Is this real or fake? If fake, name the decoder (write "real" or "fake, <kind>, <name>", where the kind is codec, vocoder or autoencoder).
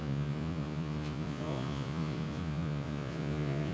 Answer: fake, vocoder, Vocos